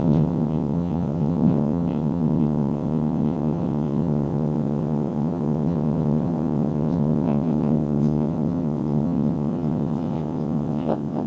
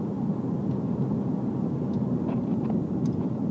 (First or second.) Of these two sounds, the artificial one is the first